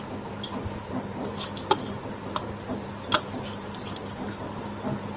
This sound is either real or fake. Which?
real